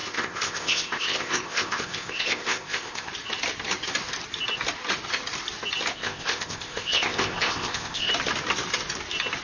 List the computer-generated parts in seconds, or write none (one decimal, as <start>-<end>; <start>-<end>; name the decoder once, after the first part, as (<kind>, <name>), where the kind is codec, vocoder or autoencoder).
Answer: 0.0-3.1 (codec, ZipCodec); 5.9-8.1